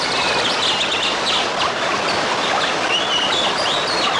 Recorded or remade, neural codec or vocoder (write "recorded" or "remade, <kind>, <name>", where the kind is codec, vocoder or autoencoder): recorded